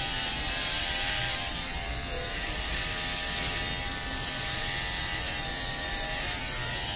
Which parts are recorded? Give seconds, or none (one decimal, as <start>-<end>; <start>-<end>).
2.7-3.8